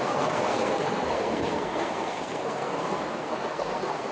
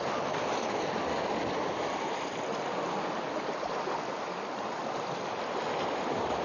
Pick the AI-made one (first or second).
first